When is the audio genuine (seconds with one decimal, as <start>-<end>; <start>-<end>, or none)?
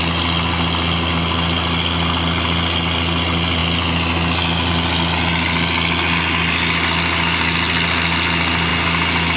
0.0-9.4